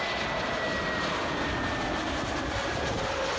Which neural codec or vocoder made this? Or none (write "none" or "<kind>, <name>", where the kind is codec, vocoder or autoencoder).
none